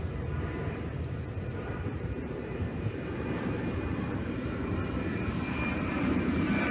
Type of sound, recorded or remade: remade